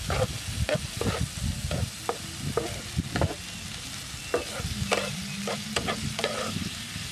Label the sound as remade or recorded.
recorded